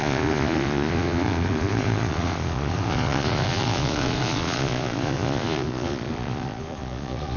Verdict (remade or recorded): remade